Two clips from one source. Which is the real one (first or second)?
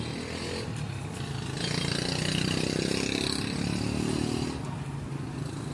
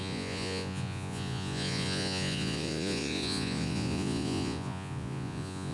first